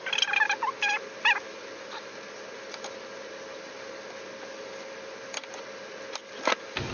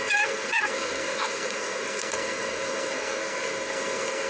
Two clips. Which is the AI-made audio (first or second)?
second